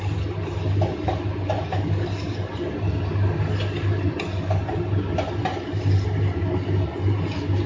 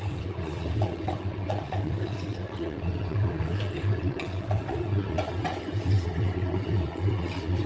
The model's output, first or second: second